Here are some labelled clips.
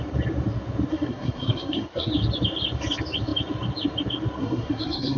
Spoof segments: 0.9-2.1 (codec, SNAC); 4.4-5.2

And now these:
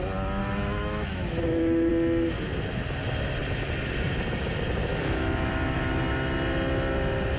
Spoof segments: 0.4-1.9 (autoencoder, DAC-VAE); 4.9-5.5

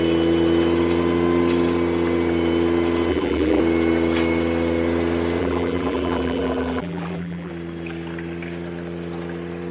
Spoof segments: 3.1-3.6 (vocoder, BigVGAN v2); 5.4-7.5

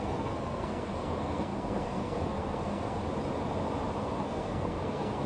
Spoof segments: 0.0-3.0 (codec, SNAC); 4.0-5.3